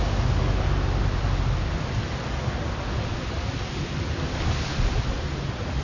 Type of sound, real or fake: real